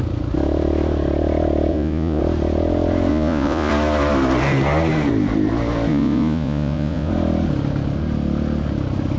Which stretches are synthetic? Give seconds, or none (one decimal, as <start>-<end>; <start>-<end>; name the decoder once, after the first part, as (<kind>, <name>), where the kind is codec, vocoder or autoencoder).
1.7-2.2 (vocoder, Vocos); 3.1-3.7; 5.9-7.1